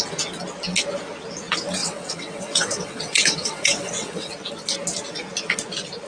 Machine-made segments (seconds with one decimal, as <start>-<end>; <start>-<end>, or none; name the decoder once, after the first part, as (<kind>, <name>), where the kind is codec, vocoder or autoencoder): 1.8-4.3 (vocoder, WaveNeXt)